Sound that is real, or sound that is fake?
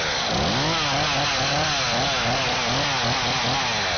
real